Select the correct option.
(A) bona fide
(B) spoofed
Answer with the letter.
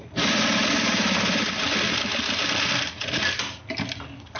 A